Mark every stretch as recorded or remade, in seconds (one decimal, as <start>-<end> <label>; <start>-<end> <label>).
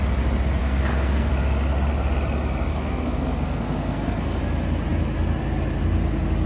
0.0-0.6 recorded; 0.6-1.3 remade; 1.3-2.7 recorded; 2.7-4.4 remade; 4.4-6.5 recorded